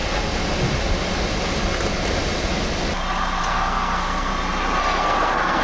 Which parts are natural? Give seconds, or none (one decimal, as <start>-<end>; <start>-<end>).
0.0-3.4; 4.3-4.8